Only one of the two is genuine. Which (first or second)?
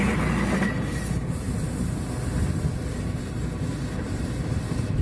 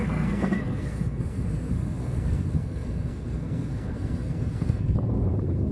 first